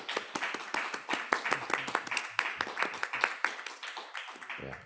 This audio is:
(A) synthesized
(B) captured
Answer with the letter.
B